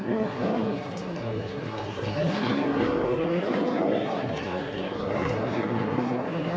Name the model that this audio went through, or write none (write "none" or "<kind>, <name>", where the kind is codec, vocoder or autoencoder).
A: codec, SNAC